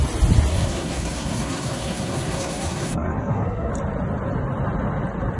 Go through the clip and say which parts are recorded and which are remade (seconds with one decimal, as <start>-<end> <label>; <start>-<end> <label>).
0.0-0.5 recorded; 0.5-3.7 remade; 3.7-5.4 recorded

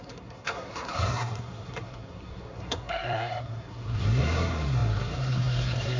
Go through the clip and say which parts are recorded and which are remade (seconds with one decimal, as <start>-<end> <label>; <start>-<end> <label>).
0.0-6.0 remade

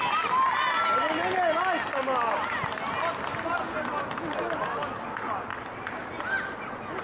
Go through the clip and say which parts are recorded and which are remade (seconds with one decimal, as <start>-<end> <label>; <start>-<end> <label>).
0.0-7.0 recorded